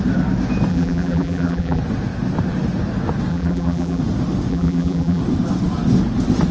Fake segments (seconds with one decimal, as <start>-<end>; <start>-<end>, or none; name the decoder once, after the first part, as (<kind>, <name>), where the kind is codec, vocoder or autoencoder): 0.7-1.8 (vocoder, BigVGAN v2); 3.3-4.0; 4.5-5.2